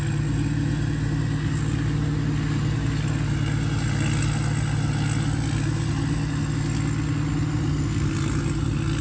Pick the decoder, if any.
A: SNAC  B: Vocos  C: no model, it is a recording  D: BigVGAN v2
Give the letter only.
C